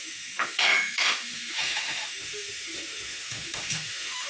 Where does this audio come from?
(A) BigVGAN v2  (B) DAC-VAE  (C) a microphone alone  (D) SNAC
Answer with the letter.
B